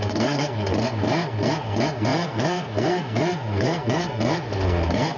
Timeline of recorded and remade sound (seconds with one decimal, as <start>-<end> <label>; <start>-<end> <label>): 0.0-5.2 remade